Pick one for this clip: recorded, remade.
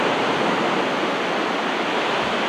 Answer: recorded